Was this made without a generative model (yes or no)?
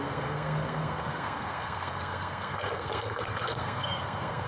no